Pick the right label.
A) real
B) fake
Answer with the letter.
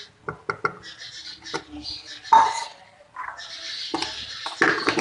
A